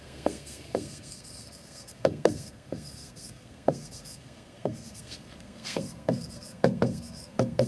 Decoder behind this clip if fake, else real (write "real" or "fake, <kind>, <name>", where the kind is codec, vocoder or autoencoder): fake, codec, SNAC